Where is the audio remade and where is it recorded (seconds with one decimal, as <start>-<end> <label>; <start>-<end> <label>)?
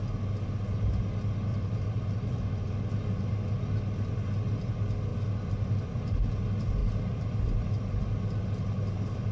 0.0-1.5 recorded; 1.5-2.9 remade; 2.9-5.1 recorded; 5.1-6.3 remade; 6.3-6.8 recorded; 6.8-7.7 remade; 7.7-9.3 recorded